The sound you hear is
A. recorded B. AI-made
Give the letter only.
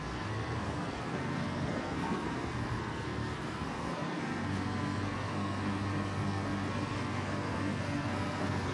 B